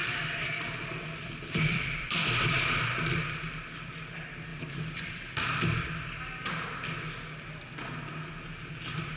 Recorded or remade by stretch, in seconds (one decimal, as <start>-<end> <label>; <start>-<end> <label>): 0.0-2.5 remade; 2.5-4.5 recorded; 4.5-5.9 remade; 5.9-9.2 recorded